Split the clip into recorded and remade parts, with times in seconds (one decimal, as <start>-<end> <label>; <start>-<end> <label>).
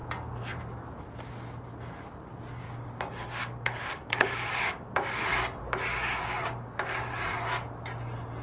0.0-2.6 recorded; 2.6-4.9 remade; 4.9-5.9 recorded; 5.9-7.0 remade; 7.0-8.4 recorded